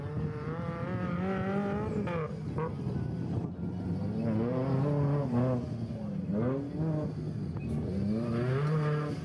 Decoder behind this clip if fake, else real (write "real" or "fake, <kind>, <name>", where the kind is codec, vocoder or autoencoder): real